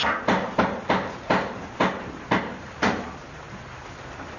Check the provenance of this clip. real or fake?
real